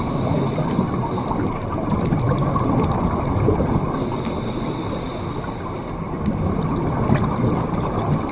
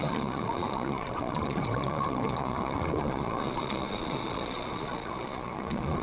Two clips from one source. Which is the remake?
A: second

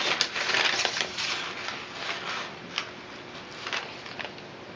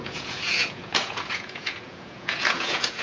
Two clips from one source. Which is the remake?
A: second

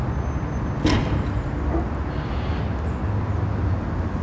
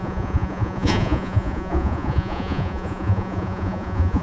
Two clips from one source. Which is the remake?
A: second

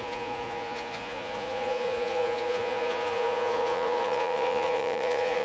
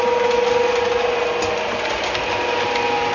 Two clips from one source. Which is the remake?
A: first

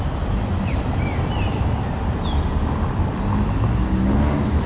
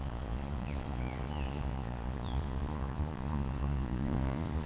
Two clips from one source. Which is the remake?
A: second